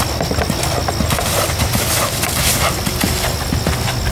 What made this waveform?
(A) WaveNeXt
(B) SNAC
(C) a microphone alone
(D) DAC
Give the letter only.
C